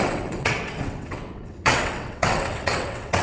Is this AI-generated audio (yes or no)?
yes